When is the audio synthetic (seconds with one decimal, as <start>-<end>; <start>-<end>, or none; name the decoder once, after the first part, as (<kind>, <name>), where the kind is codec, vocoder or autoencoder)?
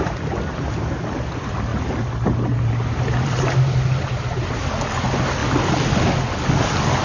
1.7-4.7 (vocoder, BigVGAN v2)